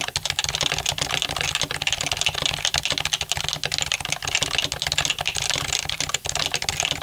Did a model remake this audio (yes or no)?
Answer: no